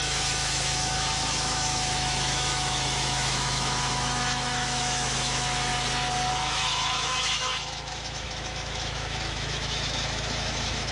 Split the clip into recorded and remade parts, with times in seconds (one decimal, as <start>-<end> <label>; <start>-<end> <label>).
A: 0.0-5.7 remade; 5.7-6.3 recorded; 6.3-10.9 remade